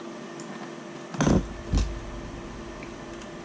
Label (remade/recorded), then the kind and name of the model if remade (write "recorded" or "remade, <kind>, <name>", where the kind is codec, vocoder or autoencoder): recorded